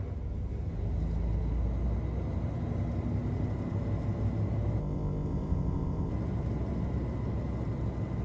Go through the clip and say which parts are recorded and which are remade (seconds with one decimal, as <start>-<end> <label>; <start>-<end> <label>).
0.0-4.8 recorded; 4.8-6.1 remade; 6.1-8.2 recorded